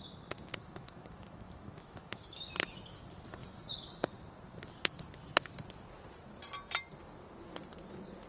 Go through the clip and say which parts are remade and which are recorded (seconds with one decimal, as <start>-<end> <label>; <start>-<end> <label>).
0.0-0.5 recorded; 0.5-2.4 remade; 2.4-8.3 recorded